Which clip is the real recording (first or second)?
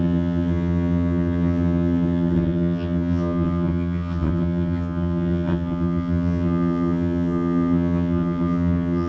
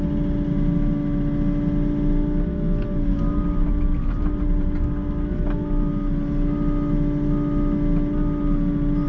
second